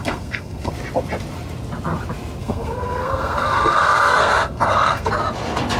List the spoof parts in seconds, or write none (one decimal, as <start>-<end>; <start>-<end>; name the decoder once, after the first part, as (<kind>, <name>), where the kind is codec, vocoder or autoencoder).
0.0-0.7 (codec, SNAC); 2.4-5.1